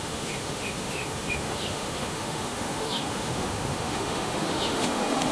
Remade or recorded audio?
remade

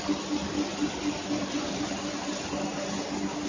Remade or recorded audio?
recorded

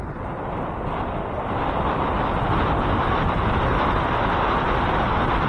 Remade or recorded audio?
recorded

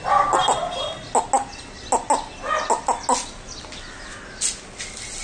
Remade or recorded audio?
recorded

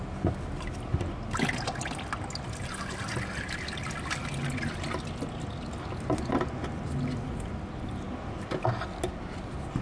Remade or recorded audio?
recorded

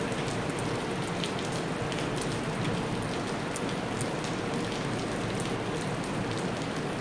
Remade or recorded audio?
recorded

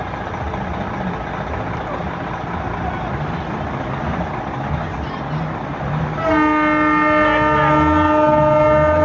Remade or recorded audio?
recorded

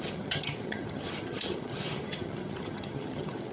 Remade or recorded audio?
remade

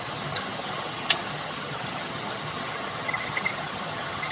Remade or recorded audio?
remade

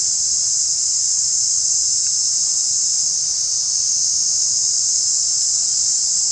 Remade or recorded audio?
recorded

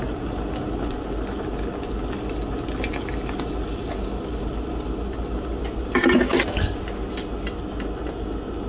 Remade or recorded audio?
recorded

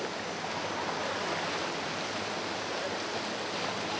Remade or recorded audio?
recorded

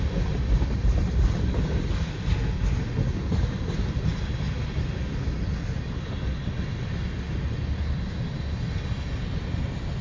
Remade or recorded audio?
recorded